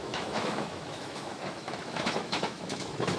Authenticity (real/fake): fake